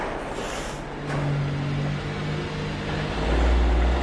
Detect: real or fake real